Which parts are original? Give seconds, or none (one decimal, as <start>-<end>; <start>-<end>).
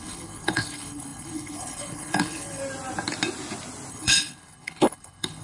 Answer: 2.6-3.9